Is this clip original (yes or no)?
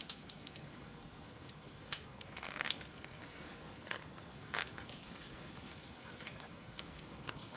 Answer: no